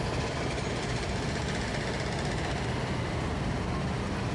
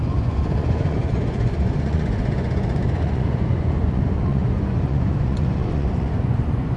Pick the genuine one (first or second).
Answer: first